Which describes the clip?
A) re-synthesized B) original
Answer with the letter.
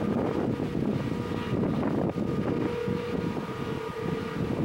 B